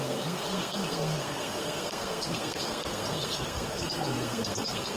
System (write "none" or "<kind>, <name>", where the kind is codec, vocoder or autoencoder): codec, SNAC